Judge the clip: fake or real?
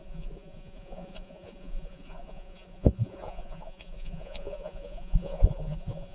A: fake